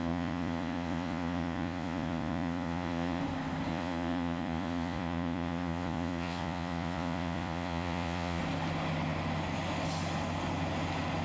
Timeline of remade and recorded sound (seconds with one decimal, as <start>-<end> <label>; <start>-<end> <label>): 0.0-3.2 remade; 3.2-3.7 recorded; 3.7-8.4 remade; 8.4-11.2 recorded